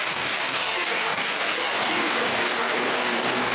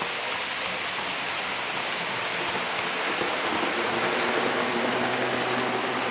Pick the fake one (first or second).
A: first